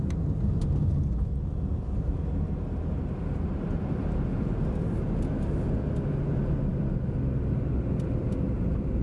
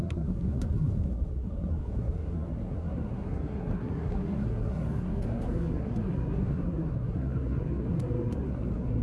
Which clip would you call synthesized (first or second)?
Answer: second